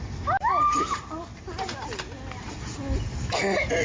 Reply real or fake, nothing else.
real